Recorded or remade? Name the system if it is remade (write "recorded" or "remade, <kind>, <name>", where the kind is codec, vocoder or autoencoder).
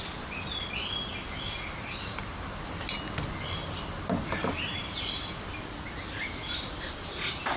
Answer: recorded